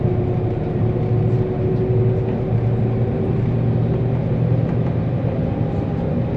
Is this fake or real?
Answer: real